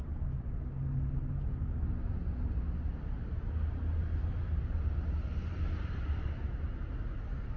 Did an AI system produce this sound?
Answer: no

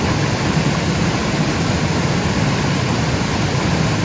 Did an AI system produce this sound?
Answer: no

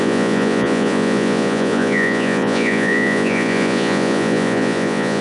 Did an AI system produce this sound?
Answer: yes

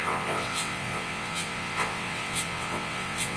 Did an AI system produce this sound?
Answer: yes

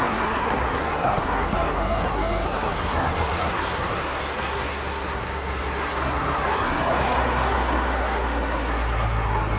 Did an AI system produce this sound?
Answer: yes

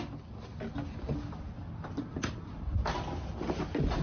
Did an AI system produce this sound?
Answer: no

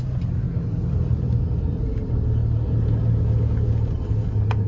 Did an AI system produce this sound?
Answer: no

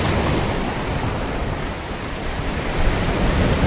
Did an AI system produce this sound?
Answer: no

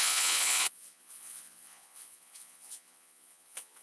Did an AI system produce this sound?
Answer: yes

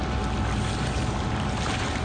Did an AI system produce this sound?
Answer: no